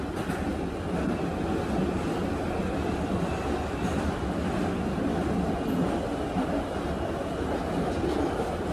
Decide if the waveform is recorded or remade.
recorded